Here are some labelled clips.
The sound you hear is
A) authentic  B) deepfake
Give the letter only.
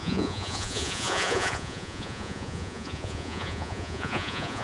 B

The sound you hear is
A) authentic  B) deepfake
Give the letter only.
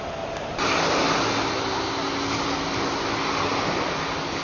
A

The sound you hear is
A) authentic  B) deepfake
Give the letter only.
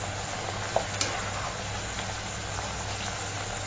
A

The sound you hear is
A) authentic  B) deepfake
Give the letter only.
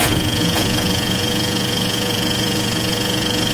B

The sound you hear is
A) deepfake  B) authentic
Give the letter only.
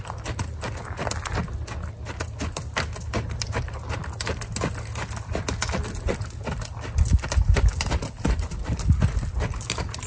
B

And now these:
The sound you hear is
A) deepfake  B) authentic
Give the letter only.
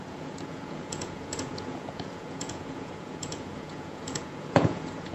A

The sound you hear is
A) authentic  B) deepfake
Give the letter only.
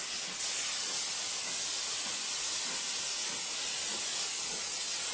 A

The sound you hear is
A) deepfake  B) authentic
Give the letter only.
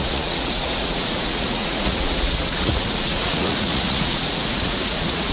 A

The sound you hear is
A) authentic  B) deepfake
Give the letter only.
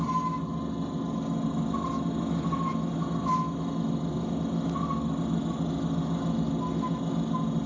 A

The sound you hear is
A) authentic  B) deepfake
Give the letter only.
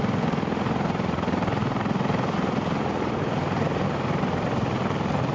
A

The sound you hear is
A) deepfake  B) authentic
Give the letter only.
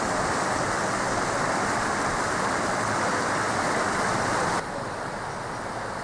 B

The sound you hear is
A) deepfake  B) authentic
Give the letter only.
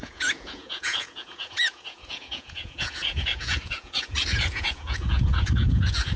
A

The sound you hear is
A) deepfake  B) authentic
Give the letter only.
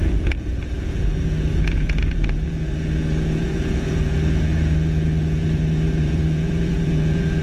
A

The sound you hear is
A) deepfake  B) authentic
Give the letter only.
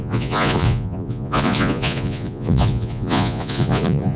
A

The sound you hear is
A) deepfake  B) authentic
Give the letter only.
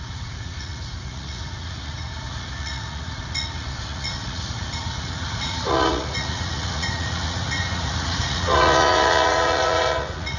A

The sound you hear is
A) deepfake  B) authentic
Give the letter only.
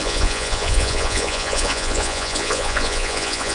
A